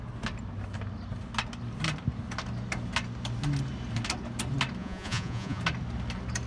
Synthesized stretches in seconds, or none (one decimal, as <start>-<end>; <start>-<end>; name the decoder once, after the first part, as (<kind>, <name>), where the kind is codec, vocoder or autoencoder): 4.8-5.6 (vocoder, Vocos)